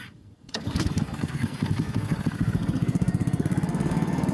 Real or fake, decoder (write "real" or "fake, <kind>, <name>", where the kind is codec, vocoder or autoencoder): fake, codec, SNAC